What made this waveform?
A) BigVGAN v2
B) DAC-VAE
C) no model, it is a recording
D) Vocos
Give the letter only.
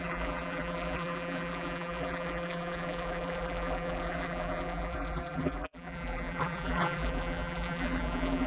A